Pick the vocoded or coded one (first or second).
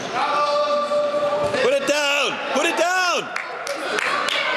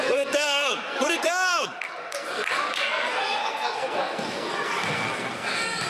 second